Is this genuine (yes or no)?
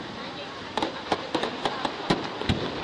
yes